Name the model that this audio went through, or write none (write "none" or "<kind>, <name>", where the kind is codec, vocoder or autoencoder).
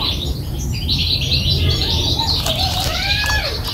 vocoder, BigVGAN v2